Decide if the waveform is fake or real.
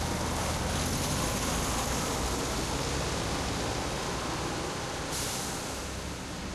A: real